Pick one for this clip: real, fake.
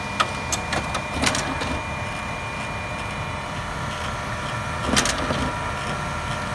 real